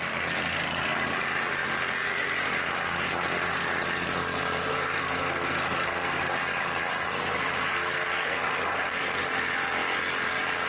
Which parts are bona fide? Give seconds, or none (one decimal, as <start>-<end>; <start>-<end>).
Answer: 0.0-4.7; 6.3-7.7; 9.2-10.7